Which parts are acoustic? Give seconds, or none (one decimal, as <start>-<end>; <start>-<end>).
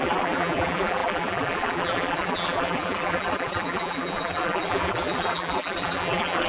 none